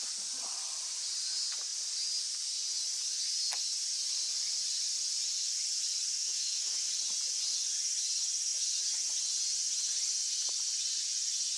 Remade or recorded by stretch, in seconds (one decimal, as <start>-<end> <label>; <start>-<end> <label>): 0.0-6.2 recorded; 6.2-6.9 remade; 6.9-11.6 recorded